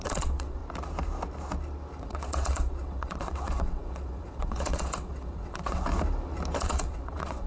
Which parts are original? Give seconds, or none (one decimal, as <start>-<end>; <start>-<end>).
0.6-2.0; 5.9-6.6